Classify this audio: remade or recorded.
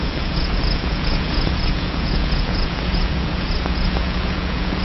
remade